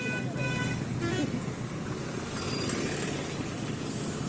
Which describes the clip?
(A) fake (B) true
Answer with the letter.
B